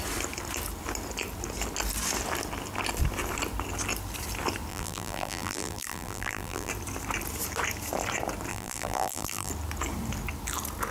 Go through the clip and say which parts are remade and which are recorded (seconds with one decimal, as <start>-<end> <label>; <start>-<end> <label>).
0.0-4.7 recorded; 4.7-6.7 remade; 6.7-8.5 recorded; 8.5-9.5 remade; 9.5-10.9 recorded